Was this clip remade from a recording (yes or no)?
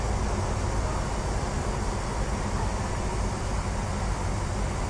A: no